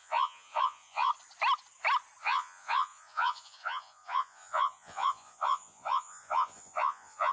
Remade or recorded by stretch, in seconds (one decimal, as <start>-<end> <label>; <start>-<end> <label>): 0.0-1.1 remade; 1.1-2.2 recorded; 2.2-7.3 remade